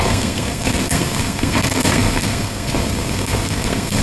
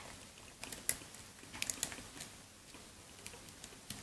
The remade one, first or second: first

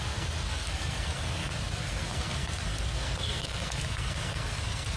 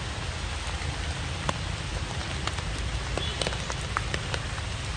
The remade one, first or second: first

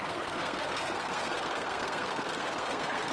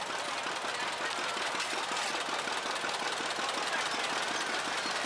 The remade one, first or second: first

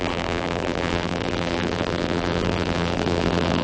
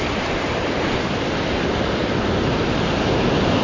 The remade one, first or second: first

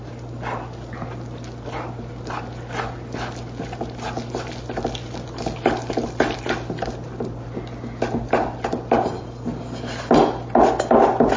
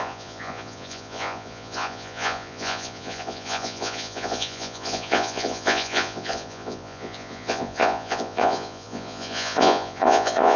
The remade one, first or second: second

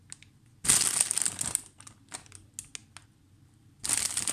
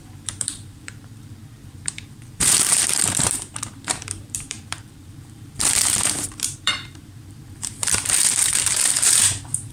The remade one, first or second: second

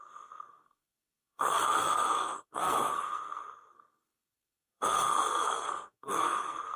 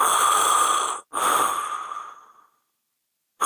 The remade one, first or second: first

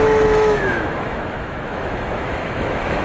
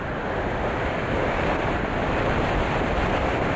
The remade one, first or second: first